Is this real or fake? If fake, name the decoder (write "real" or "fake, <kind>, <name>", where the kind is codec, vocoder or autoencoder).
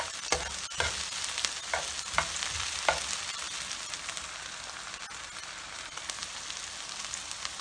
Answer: real